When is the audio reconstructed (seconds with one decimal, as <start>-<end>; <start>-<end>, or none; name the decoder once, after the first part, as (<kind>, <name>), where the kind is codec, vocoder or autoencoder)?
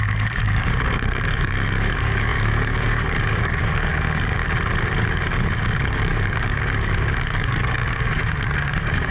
0.0-4.4 (codec, DAC); 5.1-9.1